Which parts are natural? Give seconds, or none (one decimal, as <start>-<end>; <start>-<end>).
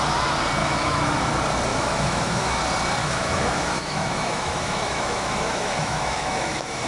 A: 0.0-0.6; 1.2-1.7; 2.6-3.0